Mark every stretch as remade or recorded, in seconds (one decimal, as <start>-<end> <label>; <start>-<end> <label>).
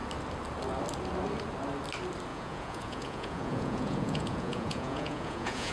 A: 0.0-2.3 recorded; 2.3-5.7 remade